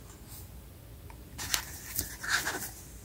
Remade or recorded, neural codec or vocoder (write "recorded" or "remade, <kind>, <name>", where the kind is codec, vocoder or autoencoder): recorded